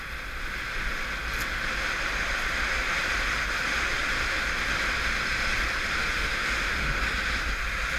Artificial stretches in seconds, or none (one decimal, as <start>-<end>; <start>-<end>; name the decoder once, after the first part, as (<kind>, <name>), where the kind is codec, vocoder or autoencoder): 6.0-7.0 (autoencoder, DAC-VAE)